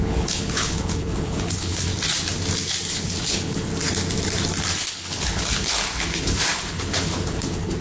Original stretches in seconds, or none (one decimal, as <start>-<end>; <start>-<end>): 1.9-2.9; 3.7-4.9